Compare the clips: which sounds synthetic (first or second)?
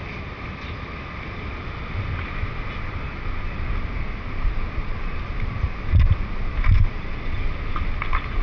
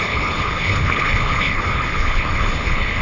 second